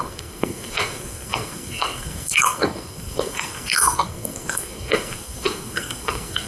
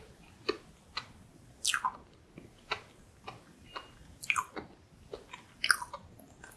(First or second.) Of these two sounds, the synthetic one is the first